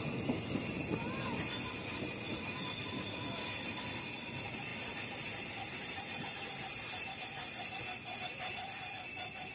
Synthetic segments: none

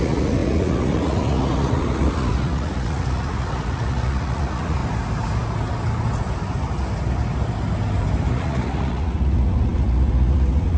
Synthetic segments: 0.0-4.8 (vocoder, Vocos); 8.3-10.8

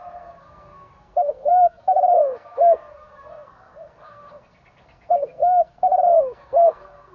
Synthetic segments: 0.0-7.1 (codec, SNAC)

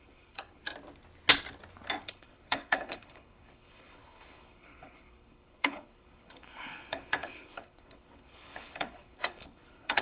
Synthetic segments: 0.0-0.6 (codec, HILCodec); 2.0-10.0